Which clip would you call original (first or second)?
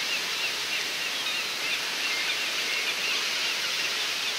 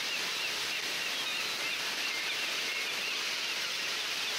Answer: second